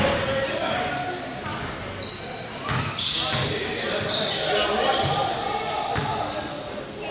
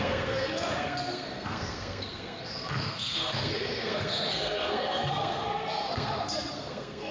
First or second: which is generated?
second